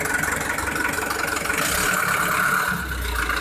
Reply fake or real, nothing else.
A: real